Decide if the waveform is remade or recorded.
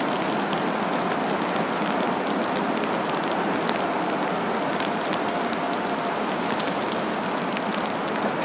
recorded